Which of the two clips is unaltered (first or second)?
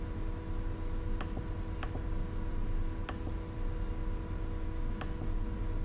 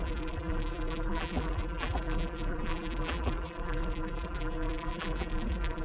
first